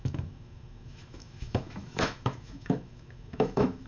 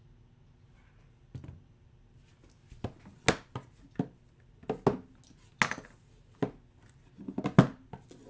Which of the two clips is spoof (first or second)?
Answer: first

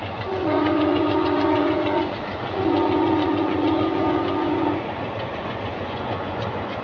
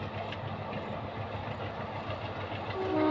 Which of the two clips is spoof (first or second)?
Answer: first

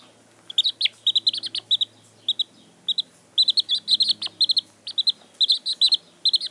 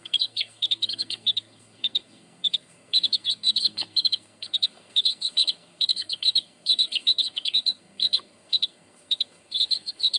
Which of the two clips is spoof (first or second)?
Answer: second